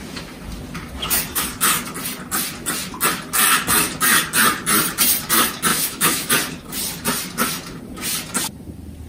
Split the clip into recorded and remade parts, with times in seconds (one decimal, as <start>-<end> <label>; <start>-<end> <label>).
0.0-5.7 recorded; 5.7-6.3 remade; 6.3-9.1 recorded